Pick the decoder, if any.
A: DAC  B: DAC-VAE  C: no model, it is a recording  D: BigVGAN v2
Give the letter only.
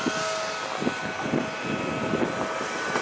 C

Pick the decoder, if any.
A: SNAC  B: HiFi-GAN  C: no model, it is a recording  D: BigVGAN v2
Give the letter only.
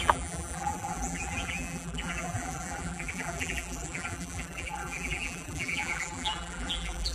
D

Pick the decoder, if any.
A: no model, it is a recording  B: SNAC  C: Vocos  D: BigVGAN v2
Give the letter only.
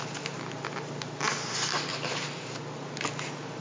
A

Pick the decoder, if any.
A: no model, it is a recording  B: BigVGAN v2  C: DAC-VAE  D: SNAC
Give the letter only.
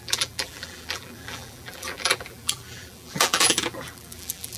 B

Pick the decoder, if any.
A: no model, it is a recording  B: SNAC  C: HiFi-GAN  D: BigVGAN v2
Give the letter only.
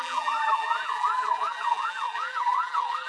D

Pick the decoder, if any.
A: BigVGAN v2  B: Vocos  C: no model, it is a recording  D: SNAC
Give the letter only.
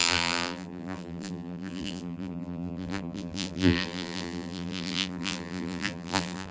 A